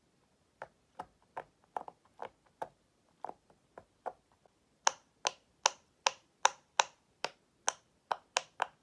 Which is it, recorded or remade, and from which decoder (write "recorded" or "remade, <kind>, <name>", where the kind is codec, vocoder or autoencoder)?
recorded